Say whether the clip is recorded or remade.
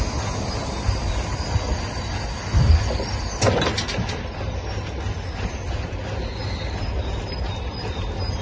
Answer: recorded